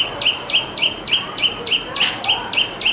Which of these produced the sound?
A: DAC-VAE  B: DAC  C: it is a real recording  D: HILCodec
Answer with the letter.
C